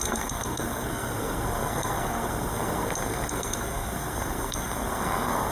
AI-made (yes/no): yes